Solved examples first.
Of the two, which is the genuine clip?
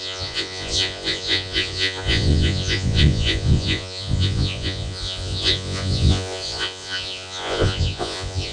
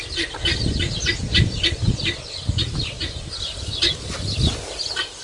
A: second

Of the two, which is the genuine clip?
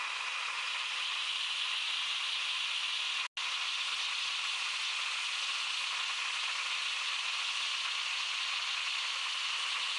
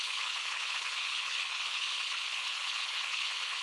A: first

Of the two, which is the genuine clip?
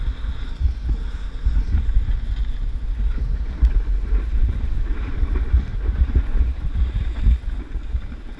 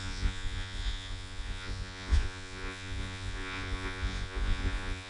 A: first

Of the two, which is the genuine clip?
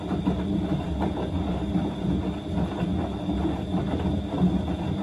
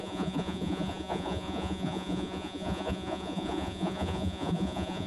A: first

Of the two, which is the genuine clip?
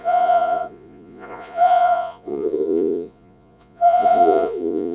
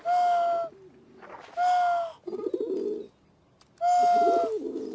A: second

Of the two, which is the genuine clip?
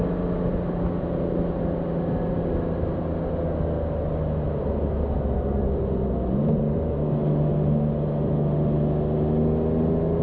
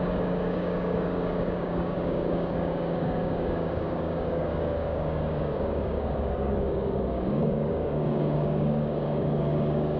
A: first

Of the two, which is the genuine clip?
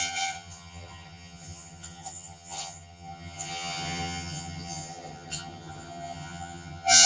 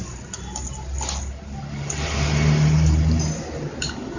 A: second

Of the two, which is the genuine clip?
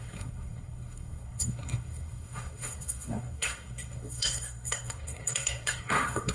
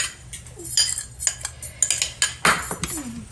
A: second